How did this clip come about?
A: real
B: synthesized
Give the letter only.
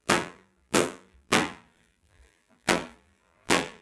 B